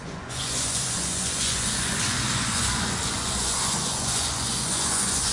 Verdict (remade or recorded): remade